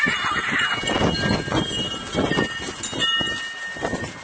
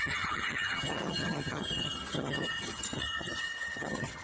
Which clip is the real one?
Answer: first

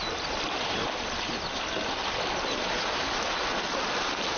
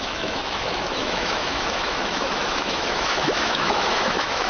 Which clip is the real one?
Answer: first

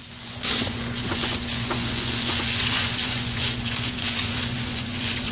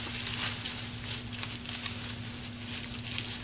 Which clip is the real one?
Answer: second